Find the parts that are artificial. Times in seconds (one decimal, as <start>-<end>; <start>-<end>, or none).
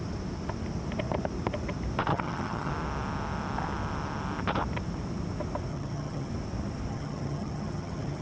2.1-2.7; 5.7-6.3; 6.9-8.2